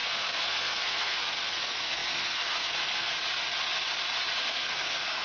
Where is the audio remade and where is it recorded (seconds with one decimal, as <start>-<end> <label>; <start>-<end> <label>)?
0.0-3.1 remade; 3.1-4.4 recorded; 4.4-5.2 remade